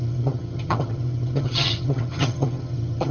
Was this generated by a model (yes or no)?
yes